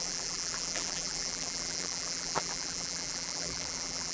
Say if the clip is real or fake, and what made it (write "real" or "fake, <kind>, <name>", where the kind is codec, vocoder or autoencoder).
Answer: fake, vocoder, BigVGAN v2